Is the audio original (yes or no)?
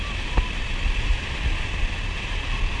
no